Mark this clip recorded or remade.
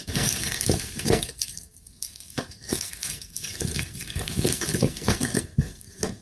remade